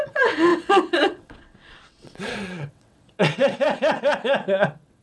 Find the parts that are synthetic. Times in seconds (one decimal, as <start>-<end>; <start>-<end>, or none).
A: 0.0-5.0